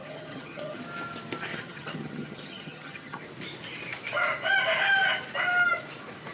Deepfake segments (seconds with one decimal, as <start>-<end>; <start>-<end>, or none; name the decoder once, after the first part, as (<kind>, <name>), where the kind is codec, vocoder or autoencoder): 0.0-0.8 (vocoder, HiFi-GAN); 1.5-3.2